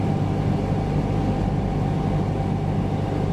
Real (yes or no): yes